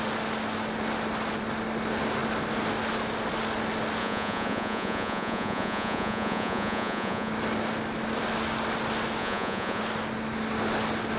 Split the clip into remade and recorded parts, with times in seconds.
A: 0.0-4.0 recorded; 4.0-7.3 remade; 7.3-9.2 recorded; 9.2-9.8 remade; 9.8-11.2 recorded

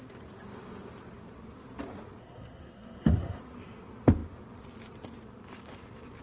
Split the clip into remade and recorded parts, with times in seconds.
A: 0.0-2.2 recorded; 2.2-3.4 remade; 3.4-6.2 recorded

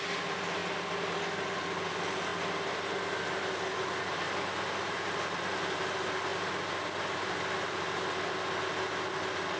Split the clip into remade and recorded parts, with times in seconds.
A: 0.0-9.6 recorded

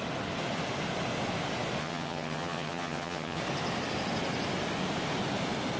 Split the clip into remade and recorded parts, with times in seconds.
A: 0.0-1.8 recorded; 1.8-3.4 remade; 3.4-5.8 recorded